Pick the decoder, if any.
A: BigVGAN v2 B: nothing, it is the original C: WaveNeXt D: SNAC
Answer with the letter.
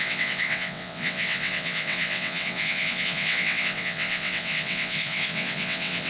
C